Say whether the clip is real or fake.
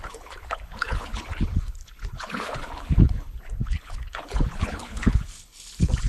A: fake